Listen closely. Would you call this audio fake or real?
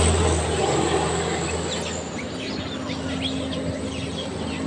real